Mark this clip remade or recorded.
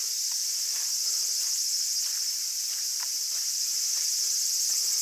remade